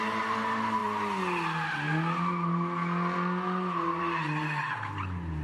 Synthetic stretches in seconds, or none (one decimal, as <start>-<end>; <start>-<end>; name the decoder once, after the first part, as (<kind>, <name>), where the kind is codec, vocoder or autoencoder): none